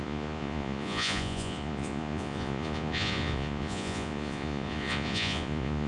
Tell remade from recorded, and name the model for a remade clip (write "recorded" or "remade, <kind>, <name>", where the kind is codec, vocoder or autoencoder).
remade, vocoder, Vocos